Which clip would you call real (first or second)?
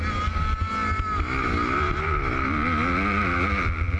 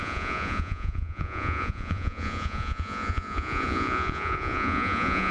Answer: first